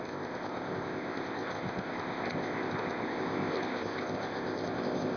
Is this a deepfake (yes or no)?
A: yes